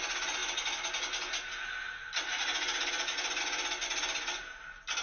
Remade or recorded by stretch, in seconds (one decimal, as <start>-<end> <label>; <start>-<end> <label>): 0.0-5.0 recorded